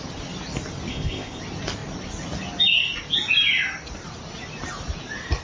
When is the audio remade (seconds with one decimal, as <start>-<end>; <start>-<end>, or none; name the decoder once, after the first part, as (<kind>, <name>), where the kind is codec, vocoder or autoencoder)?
0.9-1.4 (codec, ZipCodec)